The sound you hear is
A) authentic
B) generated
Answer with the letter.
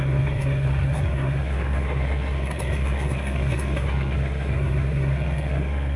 B